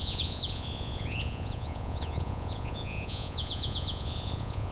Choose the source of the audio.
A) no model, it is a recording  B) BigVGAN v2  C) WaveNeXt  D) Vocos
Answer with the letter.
D